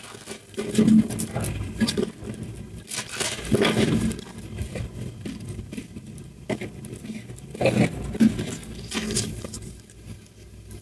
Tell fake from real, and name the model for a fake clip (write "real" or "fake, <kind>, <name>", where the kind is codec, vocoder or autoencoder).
real